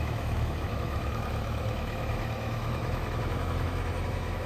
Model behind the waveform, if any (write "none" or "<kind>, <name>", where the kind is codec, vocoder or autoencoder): autoencoder, DAC-VAE